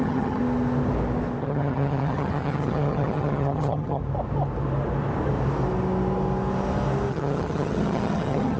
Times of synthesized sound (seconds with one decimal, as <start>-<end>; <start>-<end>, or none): 0.0-0.4; 1.4-4.0; 7.1-8.6